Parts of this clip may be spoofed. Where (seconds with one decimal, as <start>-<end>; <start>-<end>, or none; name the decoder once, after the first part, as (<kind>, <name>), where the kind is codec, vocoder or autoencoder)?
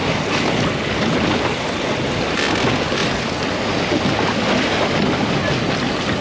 none